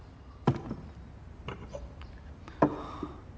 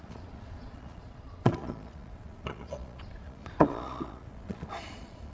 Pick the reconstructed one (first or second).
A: second